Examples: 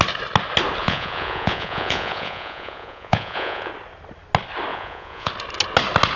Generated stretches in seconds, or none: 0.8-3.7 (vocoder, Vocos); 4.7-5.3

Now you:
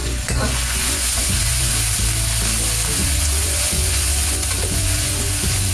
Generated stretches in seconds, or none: 0.0-1.7 (vocoder, Vocos); 3.0-5.7

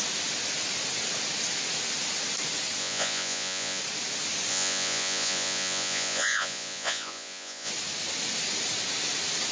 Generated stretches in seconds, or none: 2.8-3.8 (vocoder, Vocos); 4.5-7.7

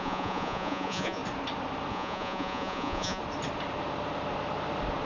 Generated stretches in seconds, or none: 0.0-1.2 (vocoder, Vocos); 1.9-3.2